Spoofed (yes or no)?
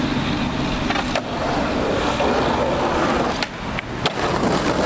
no